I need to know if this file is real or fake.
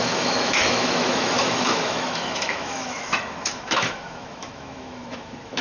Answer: fake